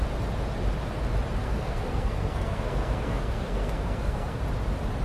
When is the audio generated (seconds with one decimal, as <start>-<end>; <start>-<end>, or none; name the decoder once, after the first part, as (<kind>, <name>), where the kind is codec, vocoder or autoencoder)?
1.4-4.4 (codec, SNAC)